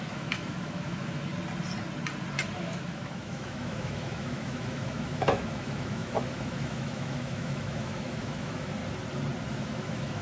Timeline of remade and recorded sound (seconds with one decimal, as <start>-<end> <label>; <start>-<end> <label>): 0.0-1.3 remade; 1.3-2.6 recorded; 2.6-8.8 remade; 8.8-9.5 recorded; 9.5-10.2 remade